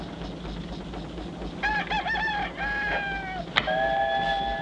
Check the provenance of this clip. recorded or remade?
recorded